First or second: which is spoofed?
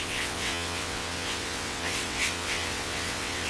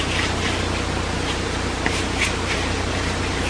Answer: first